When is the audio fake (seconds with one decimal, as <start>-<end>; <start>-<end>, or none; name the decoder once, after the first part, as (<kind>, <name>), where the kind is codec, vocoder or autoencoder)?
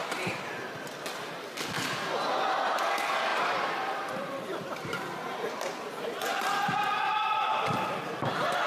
0.5-8.7 (vocoder, BigVGAN v2)